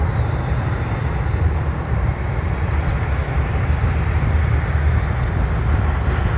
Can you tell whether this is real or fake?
real